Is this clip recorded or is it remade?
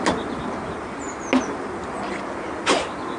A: recorded